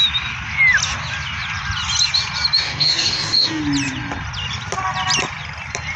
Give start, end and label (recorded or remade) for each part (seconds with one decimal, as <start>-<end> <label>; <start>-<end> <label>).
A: 0.0-2.6 recorded; 2.6-3.6 remade; 3.6-6.0 recorded